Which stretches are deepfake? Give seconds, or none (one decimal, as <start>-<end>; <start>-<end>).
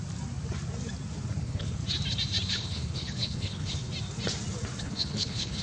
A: 1.4-1.8; 2.5-3.9; 4.8-5.6